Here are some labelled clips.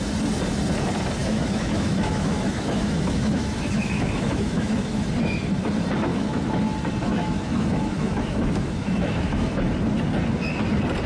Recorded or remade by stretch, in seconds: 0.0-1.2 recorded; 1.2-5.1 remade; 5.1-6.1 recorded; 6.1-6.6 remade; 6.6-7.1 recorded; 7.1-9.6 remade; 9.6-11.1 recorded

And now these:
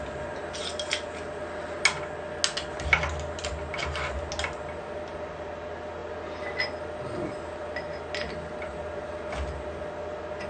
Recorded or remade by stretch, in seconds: 0.0-10.5 recorded

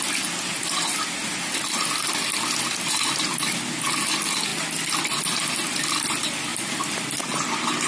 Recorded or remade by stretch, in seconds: 0.0-1.2 recorded; 1.2-1.9 remade; 1.9-4.5 recorded; 4.5-5.2 remade; 5.2-6.5 recorded; 6.5-7.5 remade; 7.5-7.9 recorded

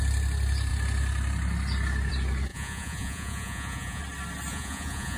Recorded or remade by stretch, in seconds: 0.0-2.5 recorded; 2.5-4.0 remade; 4.0-4.5 recorded; 4.5-5.2 remade

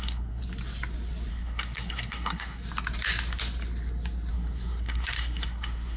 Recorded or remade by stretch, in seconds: 0.0-0.4 remade; 0.4-1.3 recorded; 1.3-2.6 remade; 2.6-4.3 recorded; 4.3-6.0 remade

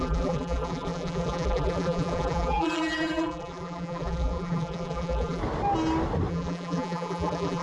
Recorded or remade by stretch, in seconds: 0.0-5.4 remade; 5.4-6.3 recorded; 6.3-7.6 remade

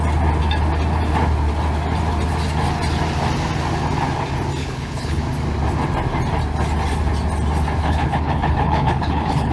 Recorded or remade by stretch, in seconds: 0.0-4.6 recorded; 4.6-5.2 remade; 5.2-7.8 recorded; 7.8-9.5 remade

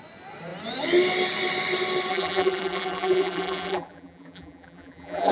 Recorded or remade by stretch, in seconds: 0.0-2.1 recorded; 2.1-5.3 remade